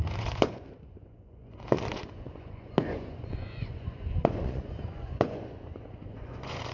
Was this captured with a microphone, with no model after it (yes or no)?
no